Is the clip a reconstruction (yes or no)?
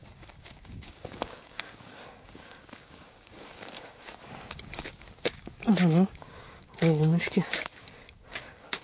yes